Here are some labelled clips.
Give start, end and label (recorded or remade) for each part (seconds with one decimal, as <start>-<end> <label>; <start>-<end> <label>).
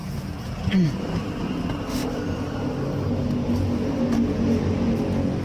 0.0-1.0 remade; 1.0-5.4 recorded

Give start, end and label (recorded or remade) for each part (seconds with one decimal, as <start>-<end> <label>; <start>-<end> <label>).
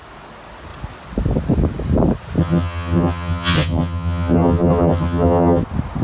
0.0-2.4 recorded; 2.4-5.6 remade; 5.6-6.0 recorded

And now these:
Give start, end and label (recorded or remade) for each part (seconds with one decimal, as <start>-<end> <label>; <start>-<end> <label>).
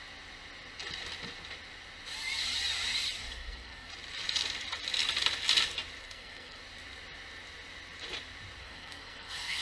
0.0-3.2 recorded; 3.2-3.9 remade; 3.9-6.0 recorded; 6.0-6.6 remade; 6.6-8.6 recorded; 8.6-9.6 remade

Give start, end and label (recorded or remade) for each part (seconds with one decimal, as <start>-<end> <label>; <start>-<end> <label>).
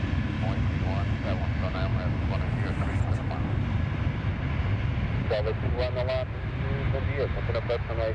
0.0-8.1 recorded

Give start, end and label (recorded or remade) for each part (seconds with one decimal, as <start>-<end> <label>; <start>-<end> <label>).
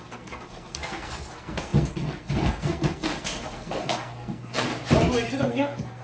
0.0-4.7 remade; 4.7-5.4 recorded; 5.4-6.0 remade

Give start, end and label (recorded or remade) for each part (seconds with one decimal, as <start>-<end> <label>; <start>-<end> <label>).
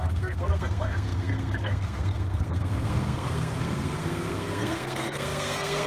0.0-5.9 remade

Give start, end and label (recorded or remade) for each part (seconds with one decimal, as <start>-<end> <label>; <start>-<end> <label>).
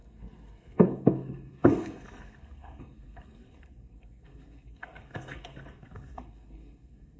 0.0-7.2 remade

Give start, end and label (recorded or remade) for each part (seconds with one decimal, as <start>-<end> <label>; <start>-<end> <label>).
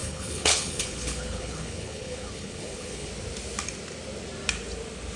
0.0-3.1 remade; 3.1-5.2 recorded